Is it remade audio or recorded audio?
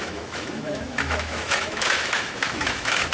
remade